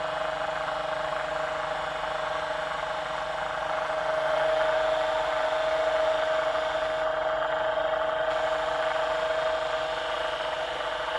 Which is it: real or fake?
real